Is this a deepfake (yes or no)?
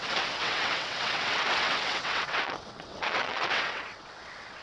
yes